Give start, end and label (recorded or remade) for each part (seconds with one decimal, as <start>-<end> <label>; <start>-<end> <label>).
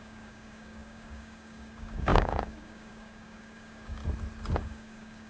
0.0-4.0 remade; 4.0-4.6 recorded; 4.6-5.3 remade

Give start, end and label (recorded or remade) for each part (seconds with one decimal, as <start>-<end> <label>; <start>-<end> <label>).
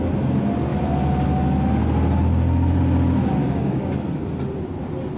0.0-3.4 recorded; 3.4-3.9 remade; 3.9-5.2 recorded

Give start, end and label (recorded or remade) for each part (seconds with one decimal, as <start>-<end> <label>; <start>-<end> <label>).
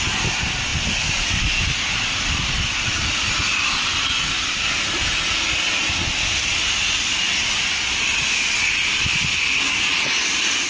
0.0-10.7 recorded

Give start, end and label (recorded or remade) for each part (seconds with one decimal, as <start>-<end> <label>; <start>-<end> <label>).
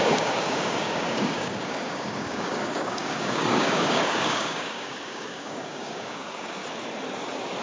0.0-6.6 remade; 6.6-7.6 recorded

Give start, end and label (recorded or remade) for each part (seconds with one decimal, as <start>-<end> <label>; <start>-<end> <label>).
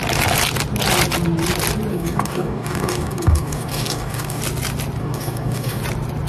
0.0-1.9 recorded; 1.9-4.4 remade; 4.4-5.0 recorded; 5.0-5.8 remade; 5.8-6.3 recorded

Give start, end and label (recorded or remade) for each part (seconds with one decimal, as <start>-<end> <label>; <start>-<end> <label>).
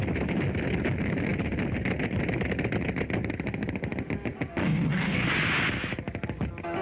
0.0-4.6 recorded; 4.6-5.3 remade; 5.3-6.8 recorded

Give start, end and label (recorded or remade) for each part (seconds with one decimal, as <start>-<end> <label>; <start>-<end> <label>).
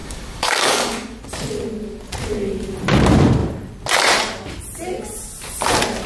0.0-1.2 remade; 1.2-6.1 recorded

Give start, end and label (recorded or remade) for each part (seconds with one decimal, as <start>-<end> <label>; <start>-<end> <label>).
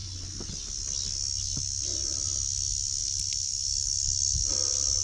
0.0-3.5 recorded; 3.5-4.5 remade; 4.5-5.0 recorded